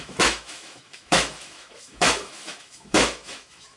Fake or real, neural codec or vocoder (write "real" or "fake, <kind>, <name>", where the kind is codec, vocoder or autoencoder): fake, autoencoder, DAC-VAE